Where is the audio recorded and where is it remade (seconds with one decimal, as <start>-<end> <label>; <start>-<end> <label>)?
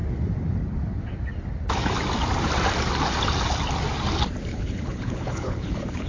0.0-4.5 recorded; 4.5-6.1 remade